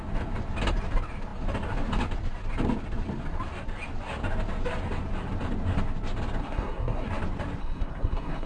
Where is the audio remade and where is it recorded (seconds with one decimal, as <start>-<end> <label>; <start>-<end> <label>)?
0.0-6.4 recorded; 6.4-7.1 remade; 7.1-7.6 recorded; 7.6-8.5 remade